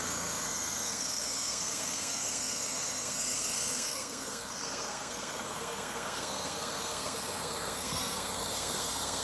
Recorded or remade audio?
remade